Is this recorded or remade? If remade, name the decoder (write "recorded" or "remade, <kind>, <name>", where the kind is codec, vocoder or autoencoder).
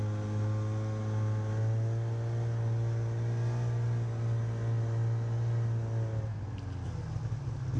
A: recorded